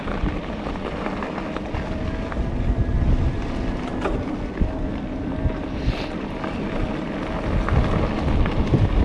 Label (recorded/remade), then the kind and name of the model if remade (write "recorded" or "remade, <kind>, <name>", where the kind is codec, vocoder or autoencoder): recorded